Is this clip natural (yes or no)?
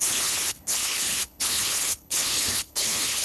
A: no